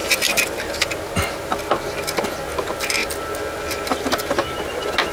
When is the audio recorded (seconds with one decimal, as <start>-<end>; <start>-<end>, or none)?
0.0-5.1